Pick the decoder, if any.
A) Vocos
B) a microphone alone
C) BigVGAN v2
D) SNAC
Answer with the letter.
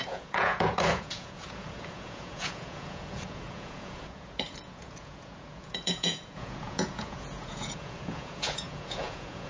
A